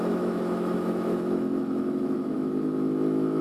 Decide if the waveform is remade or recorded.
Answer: remade